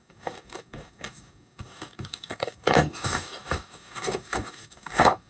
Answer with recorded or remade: remade